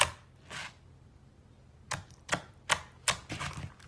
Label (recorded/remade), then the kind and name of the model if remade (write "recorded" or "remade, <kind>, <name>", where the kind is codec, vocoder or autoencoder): recorded